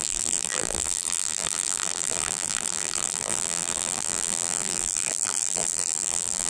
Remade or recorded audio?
remade